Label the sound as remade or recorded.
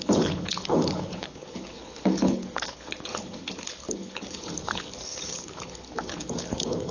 remade